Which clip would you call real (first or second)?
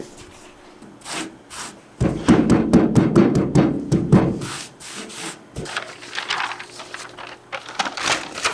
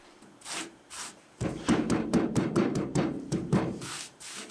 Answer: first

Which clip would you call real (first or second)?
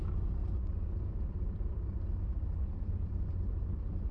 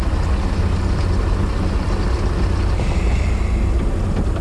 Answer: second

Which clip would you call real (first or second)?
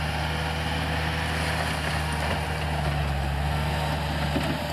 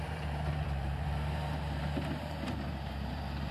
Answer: first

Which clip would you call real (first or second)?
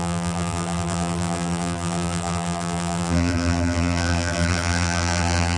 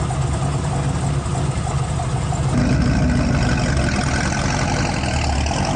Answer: second